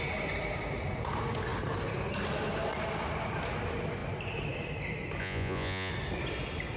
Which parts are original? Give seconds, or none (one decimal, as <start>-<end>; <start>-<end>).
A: 0.0-5.2; 5.9-6.8